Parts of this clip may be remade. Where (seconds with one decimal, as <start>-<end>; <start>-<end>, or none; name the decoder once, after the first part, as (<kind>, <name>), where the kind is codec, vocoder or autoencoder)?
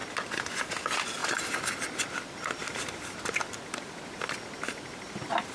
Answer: 1.2-1.8 (vocoder, BigVGAN v2)